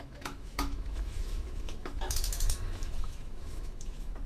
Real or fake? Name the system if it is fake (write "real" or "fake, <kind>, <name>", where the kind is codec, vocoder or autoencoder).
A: fake, autoencoder, DAC-VAE